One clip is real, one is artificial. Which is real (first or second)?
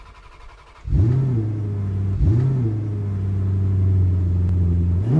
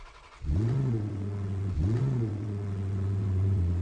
first